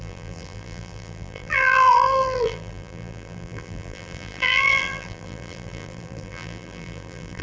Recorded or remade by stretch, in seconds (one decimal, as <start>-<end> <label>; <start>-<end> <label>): 0.0-7.4 remade